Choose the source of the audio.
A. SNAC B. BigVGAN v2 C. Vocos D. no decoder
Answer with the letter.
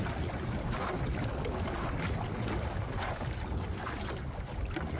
D